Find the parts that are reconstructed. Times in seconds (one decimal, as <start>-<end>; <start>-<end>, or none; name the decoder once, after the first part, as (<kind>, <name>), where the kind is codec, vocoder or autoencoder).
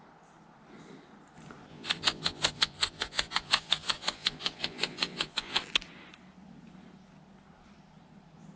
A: 1.7-5.6 (vocoder, Vocos)